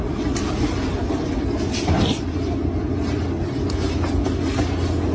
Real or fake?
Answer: real